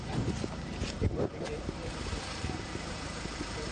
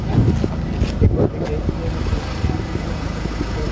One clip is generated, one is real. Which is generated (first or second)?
first